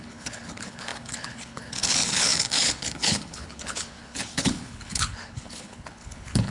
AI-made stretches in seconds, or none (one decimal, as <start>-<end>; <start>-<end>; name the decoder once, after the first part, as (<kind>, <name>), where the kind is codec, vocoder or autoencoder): 0.0-6.5 (codec, HILCodec)